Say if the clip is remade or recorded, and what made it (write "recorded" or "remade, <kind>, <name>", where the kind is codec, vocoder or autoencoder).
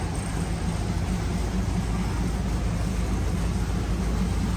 recorded